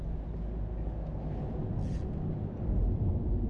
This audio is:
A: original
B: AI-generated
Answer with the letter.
A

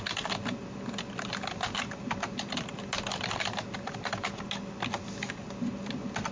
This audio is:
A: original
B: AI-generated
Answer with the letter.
A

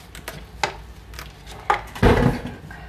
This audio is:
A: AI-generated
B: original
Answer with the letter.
B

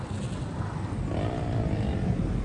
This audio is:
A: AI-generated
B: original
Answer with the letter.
B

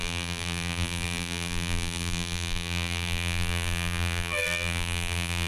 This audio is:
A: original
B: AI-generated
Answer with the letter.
B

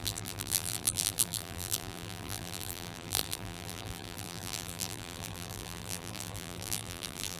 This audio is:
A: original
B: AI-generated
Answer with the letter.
B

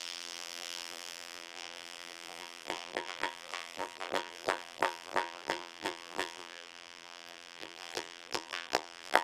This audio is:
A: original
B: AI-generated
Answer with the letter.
B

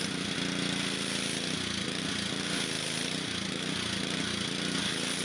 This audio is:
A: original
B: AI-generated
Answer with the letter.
A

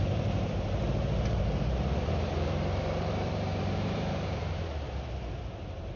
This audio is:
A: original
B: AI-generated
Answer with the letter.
B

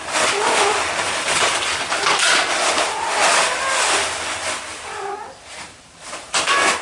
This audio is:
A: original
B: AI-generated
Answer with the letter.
B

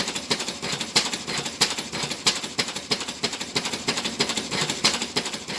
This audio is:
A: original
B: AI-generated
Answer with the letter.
B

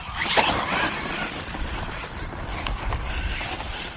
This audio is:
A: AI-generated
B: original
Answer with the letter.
A